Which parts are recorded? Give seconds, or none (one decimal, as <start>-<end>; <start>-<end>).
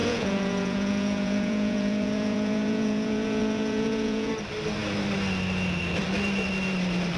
4.3-7.2